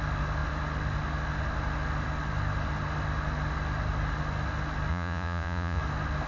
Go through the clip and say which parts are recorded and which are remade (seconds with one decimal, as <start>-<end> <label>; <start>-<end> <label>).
0.0-4.9 recorded; 4.9-5.8 remade; 5.8-6.3 recorded